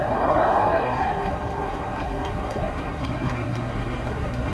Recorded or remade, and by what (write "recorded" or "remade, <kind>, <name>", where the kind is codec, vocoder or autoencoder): remade, codec, SNAC